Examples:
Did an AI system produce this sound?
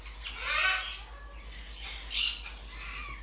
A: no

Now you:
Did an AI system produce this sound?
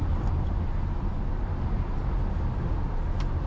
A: no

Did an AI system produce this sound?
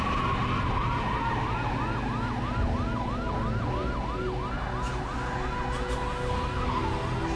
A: no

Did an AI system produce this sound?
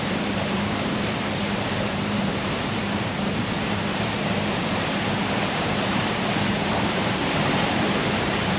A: yes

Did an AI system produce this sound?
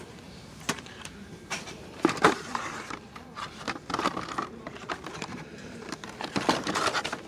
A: yes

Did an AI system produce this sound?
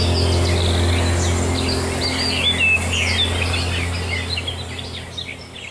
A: no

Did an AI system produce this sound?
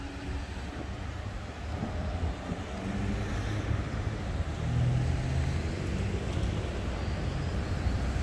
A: no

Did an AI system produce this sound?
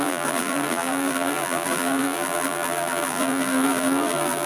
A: yes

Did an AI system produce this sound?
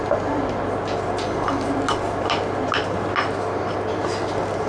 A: no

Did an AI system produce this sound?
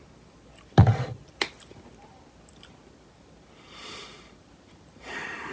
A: no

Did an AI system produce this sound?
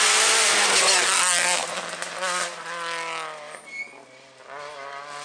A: no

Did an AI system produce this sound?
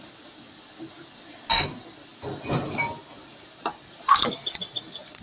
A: yes